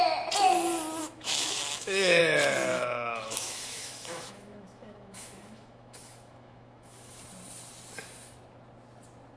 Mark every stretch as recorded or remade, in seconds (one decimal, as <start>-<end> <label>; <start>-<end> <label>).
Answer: 0.0-1.0 recorded; 1.0-2.2 remade; 2.2-2.7 recorded; 2.7-7.2 remade; 7.2-9.4 recorded